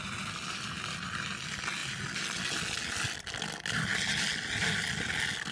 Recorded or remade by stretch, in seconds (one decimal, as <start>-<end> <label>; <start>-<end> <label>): 0.0-5.5 recorded